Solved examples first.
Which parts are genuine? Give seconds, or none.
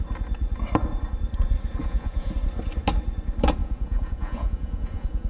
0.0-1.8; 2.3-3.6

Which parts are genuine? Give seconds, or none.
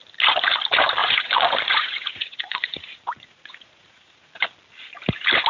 0.0-1.0; 4.3-5.5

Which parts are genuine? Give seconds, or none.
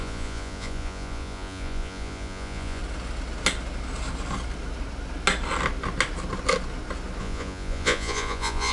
2.8-7.2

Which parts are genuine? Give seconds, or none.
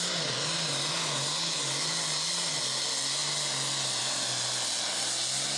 0.0-5.6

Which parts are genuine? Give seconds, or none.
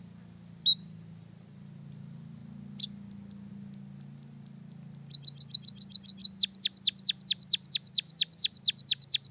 0.0-9.3